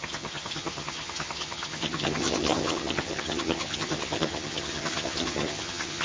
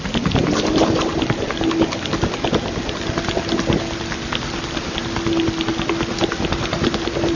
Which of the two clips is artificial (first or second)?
first